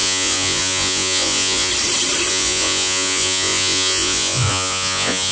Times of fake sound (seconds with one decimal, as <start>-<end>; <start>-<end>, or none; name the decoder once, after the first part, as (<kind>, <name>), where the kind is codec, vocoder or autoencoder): 0.0-1.7 (vocoder, Vocos); 2.3-5.3